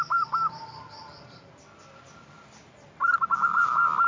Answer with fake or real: real